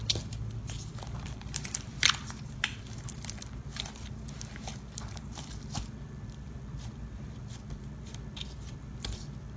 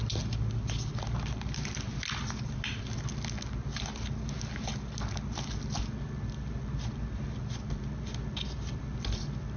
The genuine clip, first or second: second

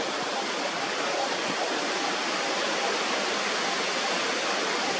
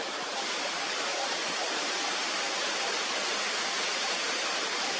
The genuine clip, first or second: first